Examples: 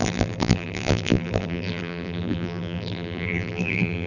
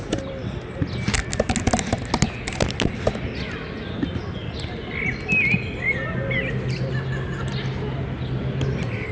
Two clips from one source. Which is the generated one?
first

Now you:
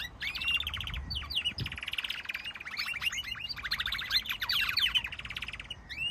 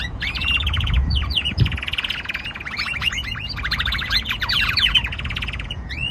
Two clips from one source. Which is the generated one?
second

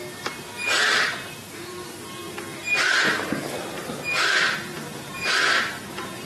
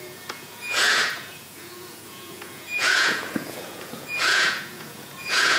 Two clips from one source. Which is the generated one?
second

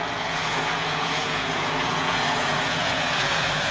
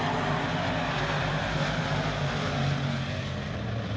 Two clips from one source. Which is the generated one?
first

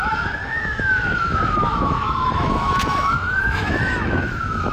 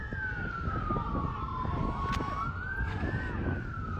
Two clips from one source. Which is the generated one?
first